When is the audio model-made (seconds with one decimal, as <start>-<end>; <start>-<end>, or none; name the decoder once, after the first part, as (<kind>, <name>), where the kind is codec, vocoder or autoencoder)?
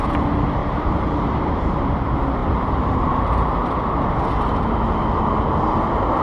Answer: 0.6-1.7 (vocoder, BigVGAN v2)